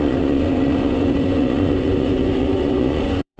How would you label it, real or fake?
fake